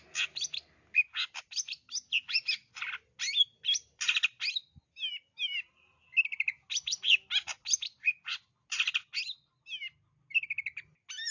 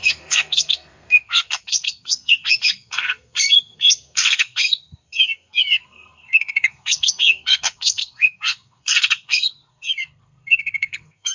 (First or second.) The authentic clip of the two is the first